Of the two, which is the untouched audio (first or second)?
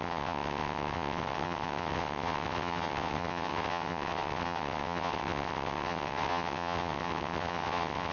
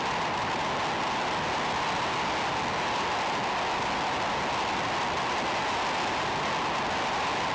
second